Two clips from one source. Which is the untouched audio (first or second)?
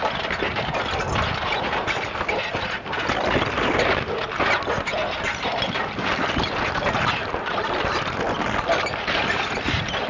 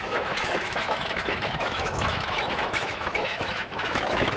first